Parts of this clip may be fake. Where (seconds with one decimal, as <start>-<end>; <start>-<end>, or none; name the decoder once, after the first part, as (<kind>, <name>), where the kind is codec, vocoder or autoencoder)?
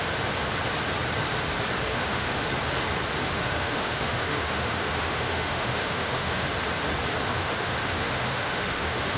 1.9-2.5 (autoencoder, DAC-VAE); 3.2-6.5; 7.4-9.2